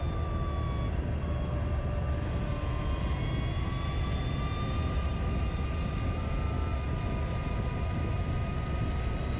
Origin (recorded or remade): recorded